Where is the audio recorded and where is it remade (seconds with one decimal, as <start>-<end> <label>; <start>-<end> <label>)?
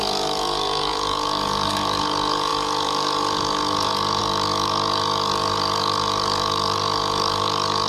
0.0-7.9 remade